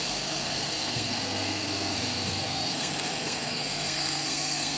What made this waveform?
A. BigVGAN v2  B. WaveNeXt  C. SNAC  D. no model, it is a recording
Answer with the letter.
C